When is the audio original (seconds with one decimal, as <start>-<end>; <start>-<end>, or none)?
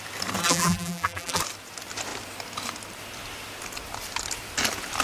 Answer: 0.0-0.4; 1.4-5.0